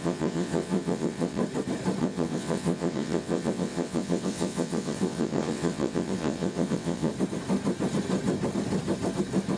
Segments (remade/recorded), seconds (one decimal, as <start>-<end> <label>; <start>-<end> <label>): 0.0-1.4 remade; 1.4-2.0 recorded; 2.0-7.1 remade; 7.1-9.6 recorded